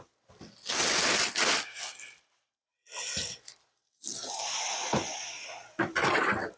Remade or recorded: recorded